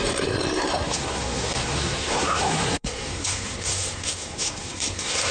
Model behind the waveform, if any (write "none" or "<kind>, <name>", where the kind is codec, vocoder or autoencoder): codec, SNAC